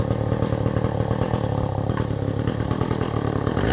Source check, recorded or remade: recorded